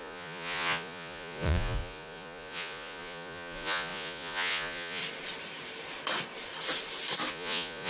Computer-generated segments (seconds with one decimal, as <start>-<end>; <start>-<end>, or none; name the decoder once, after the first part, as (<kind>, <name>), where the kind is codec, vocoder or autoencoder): 0.0-5.0 (vocoder, Vocos); 7.3-7.9